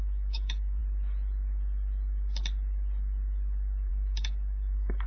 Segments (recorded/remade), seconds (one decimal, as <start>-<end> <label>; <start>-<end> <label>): 0.0-0.8 remade; 0.8-3.9 recorded; 3.9-5.1 remade